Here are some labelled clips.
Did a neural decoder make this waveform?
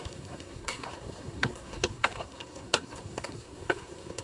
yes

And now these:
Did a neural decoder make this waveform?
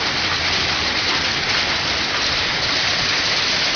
yes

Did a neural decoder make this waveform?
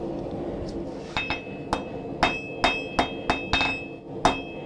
no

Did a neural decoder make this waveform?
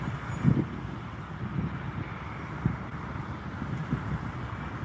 no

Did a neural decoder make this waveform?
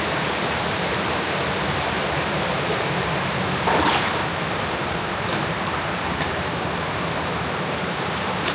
yes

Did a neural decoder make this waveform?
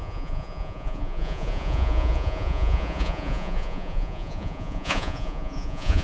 yes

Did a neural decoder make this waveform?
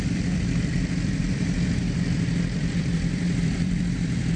yes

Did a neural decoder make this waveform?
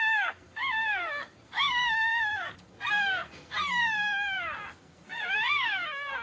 yes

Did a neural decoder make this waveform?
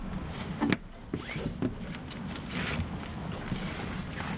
no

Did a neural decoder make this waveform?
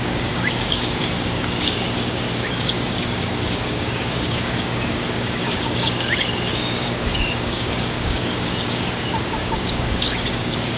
yes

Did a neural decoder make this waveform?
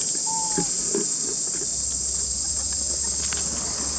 no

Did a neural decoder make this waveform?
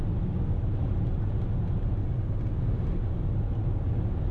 no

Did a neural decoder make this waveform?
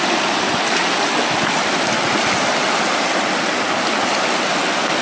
no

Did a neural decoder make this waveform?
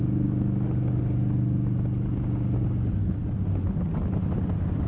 no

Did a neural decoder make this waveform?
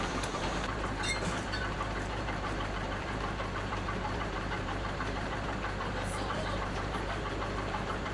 yes